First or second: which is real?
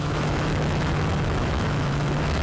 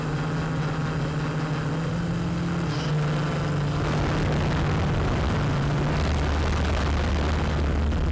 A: second